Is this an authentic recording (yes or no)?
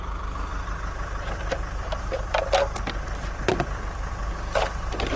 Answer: yes